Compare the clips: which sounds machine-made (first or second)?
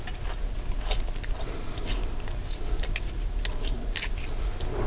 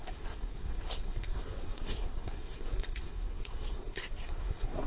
second